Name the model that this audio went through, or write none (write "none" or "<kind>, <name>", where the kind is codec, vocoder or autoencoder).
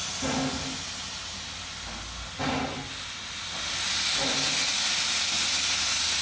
none